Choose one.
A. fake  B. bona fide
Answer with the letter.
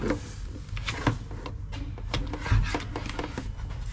B